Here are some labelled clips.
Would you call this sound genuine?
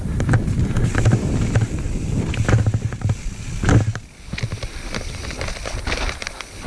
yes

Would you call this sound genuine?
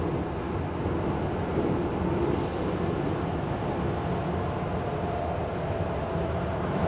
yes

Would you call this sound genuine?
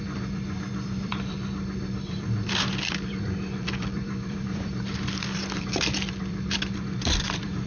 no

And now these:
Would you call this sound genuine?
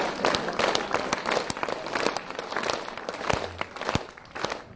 yes